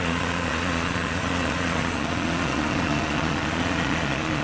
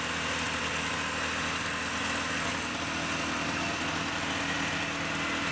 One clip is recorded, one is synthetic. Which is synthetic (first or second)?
first